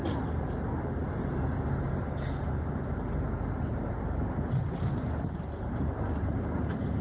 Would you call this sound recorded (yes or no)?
yes